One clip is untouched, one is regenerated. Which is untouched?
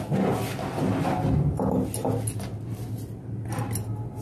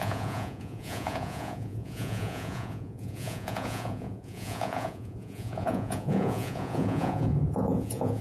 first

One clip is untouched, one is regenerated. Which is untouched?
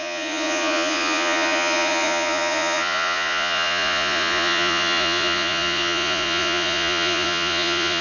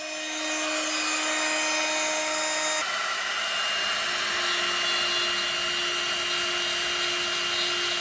second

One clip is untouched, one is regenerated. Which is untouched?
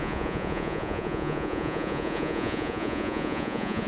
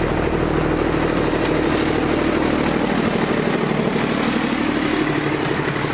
second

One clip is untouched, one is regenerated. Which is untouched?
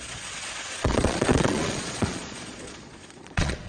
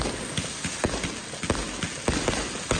second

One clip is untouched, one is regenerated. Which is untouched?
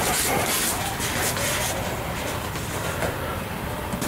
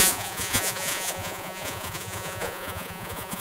first